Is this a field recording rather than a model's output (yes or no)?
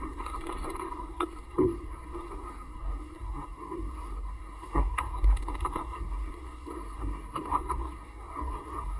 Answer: no